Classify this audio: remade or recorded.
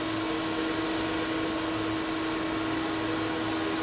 recorded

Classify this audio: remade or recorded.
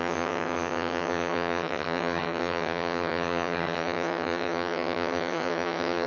remade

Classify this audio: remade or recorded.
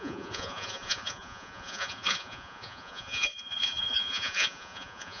remade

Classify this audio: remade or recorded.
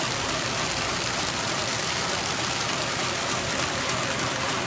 remade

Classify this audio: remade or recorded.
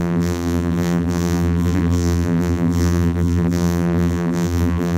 remade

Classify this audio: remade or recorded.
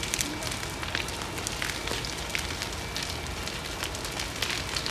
recorded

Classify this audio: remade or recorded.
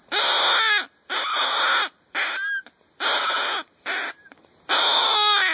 recorded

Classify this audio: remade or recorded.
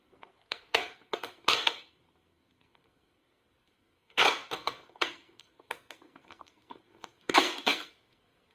remade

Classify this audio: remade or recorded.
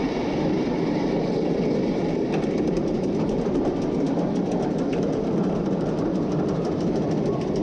remade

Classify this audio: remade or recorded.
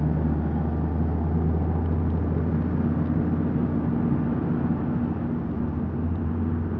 recorded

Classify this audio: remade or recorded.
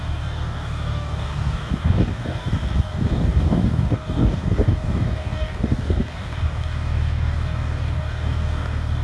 remade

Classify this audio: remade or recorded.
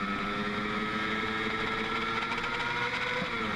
recorded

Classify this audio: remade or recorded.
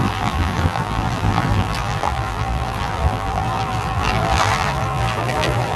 remade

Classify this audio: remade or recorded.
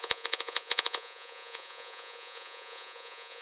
remade